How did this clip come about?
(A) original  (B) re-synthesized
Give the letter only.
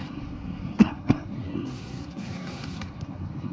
B